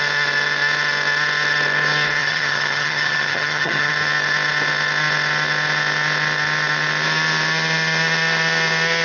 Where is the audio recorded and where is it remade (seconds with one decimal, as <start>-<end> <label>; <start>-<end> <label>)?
0.0-2.2 recorded; 2.2-3.9 remade; 3.9-9.0 recorded

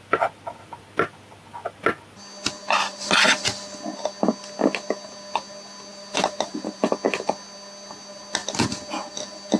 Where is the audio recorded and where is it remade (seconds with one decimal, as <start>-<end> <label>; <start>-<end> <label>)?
0.0-2.6 recorded; 2.6-3.4 remade; 3.4-5.9 recorded; 5.9-6.8 remade; 6.8-9.6 recorded

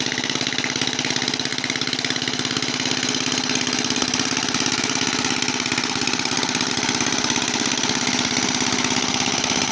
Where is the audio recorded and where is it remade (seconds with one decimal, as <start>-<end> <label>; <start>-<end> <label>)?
0.0-9.7 recorded